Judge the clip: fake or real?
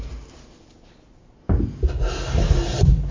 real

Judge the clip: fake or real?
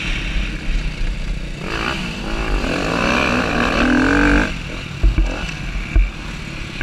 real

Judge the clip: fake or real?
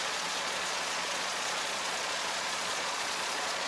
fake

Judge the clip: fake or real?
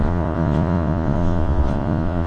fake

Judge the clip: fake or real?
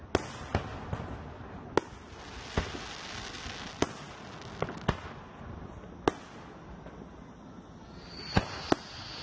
real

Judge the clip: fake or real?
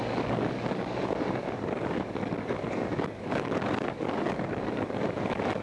fake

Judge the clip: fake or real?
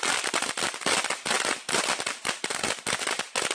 real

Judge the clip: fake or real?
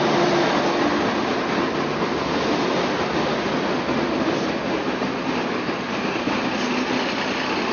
real